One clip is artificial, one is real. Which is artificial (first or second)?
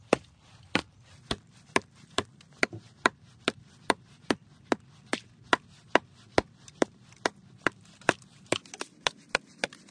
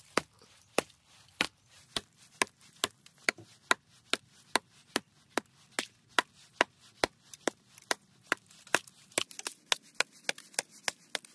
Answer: first